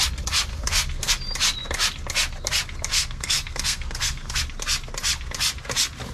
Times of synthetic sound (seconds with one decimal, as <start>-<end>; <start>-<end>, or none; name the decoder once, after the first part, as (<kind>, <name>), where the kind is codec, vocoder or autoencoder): 0.5-1.1 (codec, SNAC); 2.9-4.4